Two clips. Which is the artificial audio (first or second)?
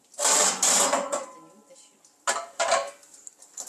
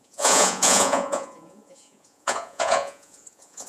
second